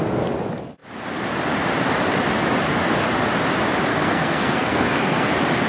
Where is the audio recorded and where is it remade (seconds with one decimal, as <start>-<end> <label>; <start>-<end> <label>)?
0.0-3.9 recorded; 3.9-5.3 remade; 5.3-5.7 recorded